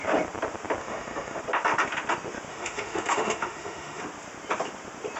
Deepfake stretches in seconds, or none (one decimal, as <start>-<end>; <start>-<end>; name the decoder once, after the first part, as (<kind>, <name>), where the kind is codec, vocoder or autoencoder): 0.8-1.4 (autoencoder, DAC-VAE); 2.5-4.0